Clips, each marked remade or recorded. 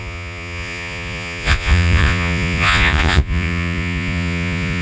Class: remade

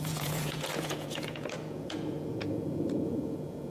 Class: remade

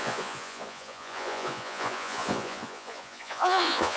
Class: remade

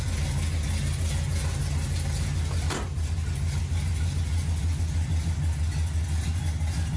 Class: recorded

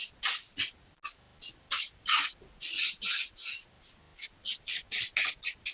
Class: recorded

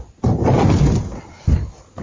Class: recorded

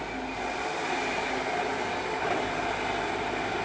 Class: recorded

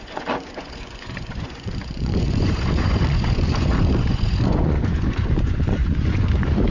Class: remade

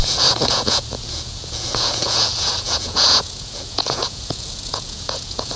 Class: remade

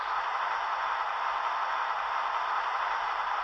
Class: recorded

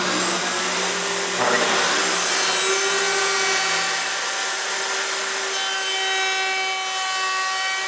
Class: recorded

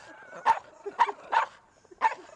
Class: recorded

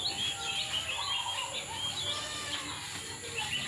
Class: recorded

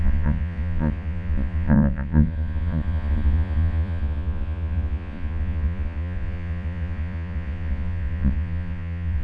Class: remade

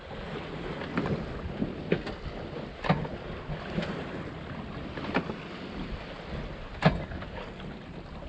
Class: recorded